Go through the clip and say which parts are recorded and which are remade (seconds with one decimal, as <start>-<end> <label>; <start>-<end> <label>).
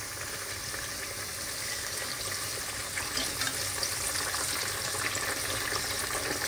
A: 0.0-1.6 recorded; 1.6-2.2 remade; 2.2-6.5 recorded